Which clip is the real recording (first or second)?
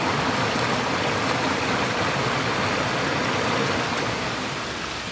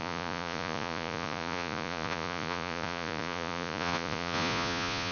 first